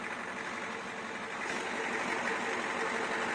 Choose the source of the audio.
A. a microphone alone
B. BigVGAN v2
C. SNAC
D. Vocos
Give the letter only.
A